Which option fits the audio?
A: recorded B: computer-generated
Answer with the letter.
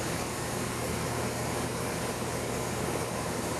B